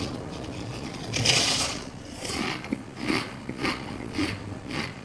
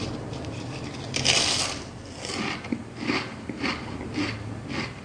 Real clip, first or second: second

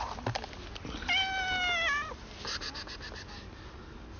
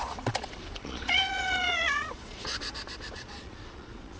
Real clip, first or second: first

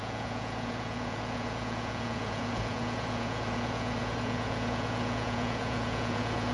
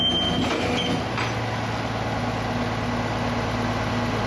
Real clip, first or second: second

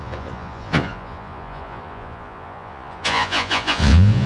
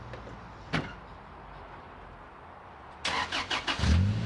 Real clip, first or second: second